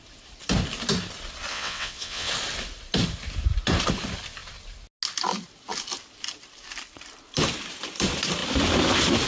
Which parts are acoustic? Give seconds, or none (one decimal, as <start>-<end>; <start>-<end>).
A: 0.0-1.5; 2.3-9.3